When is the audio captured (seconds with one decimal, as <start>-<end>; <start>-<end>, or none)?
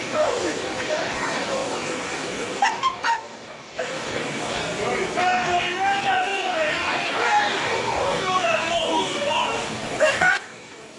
4.6-5.2